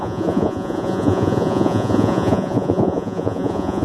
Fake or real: fake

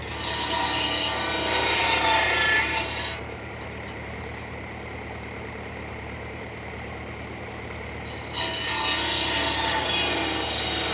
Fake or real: real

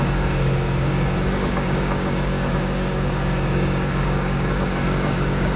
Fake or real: fake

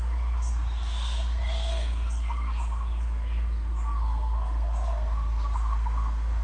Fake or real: fake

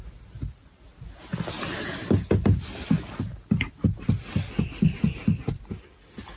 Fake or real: real